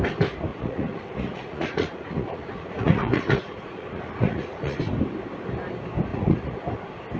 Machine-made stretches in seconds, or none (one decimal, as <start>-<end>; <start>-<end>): 0.5-4.8; 6.1-6.6